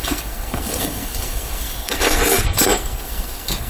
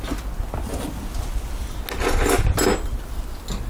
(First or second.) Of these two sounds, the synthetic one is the first